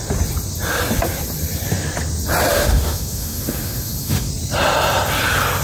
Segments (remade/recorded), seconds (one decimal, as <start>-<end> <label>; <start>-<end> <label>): 0.0-2.5 recorded; 2.5-4.3 remade; 4.3-5.6 recorded